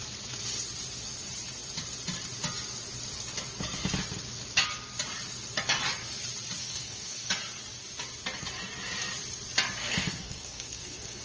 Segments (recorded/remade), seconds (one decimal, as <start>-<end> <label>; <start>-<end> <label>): 0.0-6.6 recorded; 6.6-7.3 remade; 7.3-9.8 recorded; 9.8-11.2 remade